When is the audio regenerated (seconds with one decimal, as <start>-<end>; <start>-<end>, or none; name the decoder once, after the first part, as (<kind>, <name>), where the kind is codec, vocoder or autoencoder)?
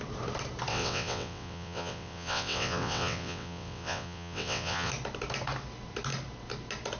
0.7-4.9 (vocoder, WaveNeXt)